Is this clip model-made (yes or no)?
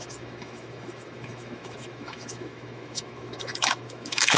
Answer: yes